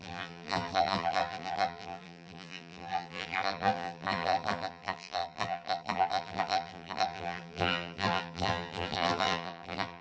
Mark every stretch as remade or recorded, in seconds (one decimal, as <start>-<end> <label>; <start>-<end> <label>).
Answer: 0.0-10.0 remade